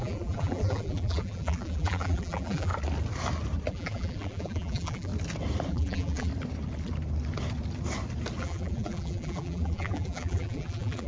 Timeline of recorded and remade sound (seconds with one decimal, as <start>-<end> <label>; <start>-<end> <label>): 0.0-2.7 remade; 2.7-3.7 recorded; 3.7-5.1 remade; 5.1-5.7 recorded; 5.7-6.3 remade; 6.3-8.4 recorded; 8.4-11.1 remade